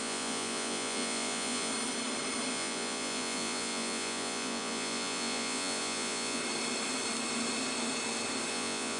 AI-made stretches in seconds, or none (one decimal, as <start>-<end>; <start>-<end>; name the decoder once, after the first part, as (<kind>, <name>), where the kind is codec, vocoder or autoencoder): 0.0-1.7 (vocoder, Vocos); 2.5-6.4; 8.5-9.0